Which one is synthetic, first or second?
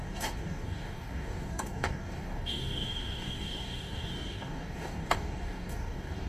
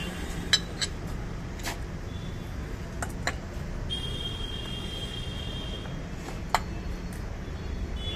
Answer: first